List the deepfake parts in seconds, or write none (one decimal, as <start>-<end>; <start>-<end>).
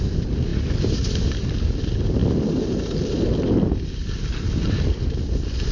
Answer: none